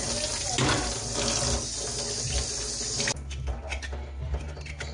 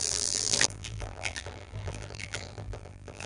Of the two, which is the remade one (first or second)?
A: second